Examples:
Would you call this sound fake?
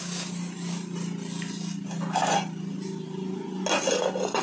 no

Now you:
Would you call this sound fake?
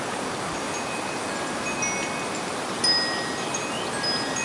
no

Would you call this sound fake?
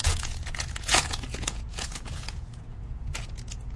yes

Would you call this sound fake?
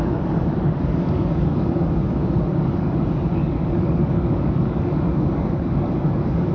yes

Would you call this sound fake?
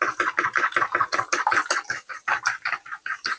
no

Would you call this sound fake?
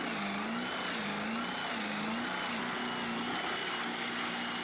no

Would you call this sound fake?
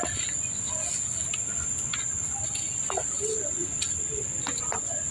no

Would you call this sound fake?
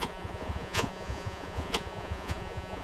yes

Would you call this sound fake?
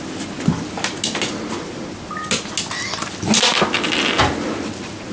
no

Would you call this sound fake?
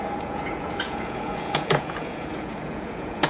yes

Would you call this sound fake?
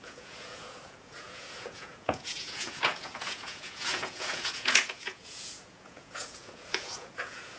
yes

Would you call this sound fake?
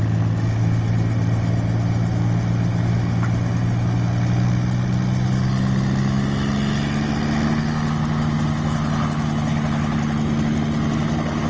no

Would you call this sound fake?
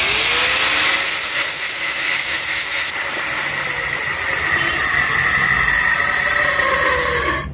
no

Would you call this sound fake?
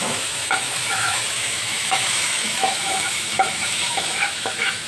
yes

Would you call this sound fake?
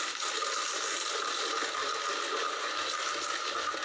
no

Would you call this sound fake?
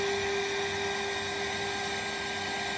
no